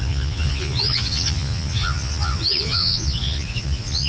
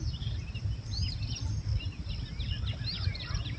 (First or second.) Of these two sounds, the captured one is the second